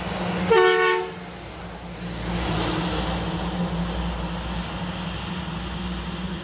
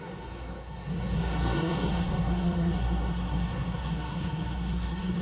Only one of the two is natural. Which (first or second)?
first